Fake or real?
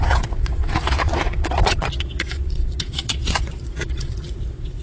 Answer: fake